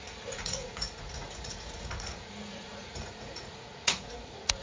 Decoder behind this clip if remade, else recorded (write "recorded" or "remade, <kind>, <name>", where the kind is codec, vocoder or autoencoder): remade, vocoder, Vocos